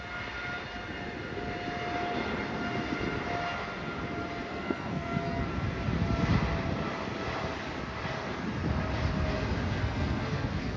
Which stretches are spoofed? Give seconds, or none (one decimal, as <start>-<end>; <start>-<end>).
4.5-5.5; 9.8-10.8